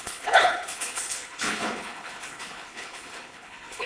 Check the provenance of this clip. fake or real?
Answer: fake